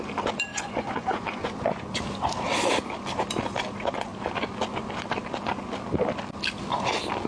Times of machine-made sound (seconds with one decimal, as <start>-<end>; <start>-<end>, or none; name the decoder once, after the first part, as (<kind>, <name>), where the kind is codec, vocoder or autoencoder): 0.5-2.0 (vocoder, Vocos)